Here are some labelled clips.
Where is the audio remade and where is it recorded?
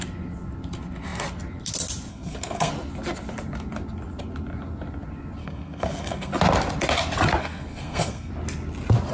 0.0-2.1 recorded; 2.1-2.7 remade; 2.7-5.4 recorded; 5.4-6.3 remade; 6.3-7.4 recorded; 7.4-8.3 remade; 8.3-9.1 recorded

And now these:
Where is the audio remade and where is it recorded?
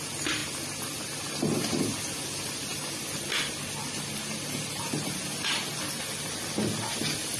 0.0-7.4 recorded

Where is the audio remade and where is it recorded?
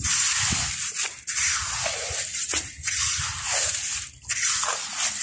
0.0-2.3 recorded; 2.3-3.6 remade; 3.6-5.2 recorded